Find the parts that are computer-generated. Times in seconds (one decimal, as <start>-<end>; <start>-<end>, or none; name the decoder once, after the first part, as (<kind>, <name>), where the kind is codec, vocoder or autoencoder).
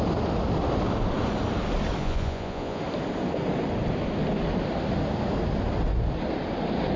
2.0-2.8 (vocoder, Vocos)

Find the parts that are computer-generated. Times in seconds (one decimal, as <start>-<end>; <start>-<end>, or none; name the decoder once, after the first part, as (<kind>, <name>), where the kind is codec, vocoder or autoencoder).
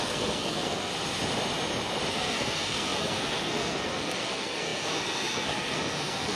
0.0-0.9 (codec, SNAC); 2.1-6.4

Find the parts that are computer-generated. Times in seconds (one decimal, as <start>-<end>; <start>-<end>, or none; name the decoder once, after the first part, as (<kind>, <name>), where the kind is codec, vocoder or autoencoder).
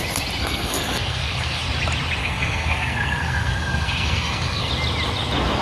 0.4-1.6 (codec, SNAC); 2.2-4.7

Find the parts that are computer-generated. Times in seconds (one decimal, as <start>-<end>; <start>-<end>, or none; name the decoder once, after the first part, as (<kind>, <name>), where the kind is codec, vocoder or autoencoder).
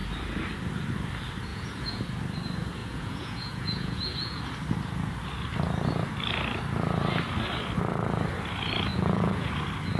1.5-2.0 (vocoder, Vocos); 2.8-4.4; 8.9-9.5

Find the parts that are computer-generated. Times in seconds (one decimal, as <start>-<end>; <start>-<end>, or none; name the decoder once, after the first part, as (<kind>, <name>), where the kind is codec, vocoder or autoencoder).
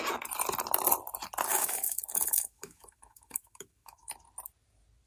1.5-4.1 (autoencoder, DAC-VAE)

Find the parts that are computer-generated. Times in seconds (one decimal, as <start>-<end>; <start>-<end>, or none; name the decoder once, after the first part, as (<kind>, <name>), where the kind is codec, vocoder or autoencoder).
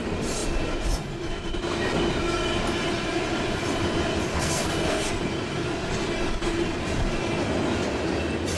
4.3-5.1 (codec, SNAC)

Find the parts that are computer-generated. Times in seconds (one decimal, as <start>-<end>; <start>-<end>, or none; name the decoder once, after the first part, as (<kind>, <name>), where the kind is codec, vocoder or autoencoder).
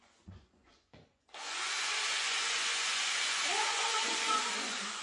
0.0-5.0 (vocoder, Vocos)